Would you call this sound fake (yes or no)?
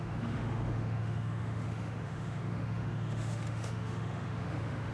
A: yes